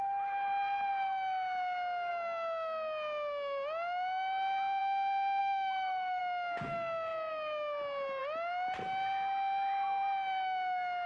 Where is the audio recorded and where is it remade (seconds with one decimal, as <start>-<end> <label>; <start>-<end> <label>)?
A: 0.0-5.4 recorded; 5.4-6.2 remade; 6.2-11.1 recorded